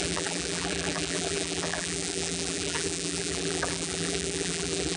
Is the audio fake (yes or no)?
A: yes